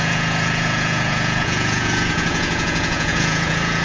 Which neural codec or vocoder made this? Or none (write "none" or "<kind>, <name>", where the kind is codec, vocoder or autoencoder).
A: vocoder, Vocos